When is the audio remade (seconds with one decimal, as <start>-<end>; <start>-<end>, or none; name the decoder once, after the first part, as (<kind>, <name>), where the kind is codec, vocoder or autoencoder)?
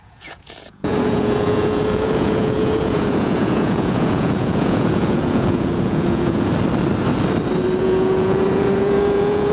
0.0-6.5 (vocoder, Vocos); 7.8-9.5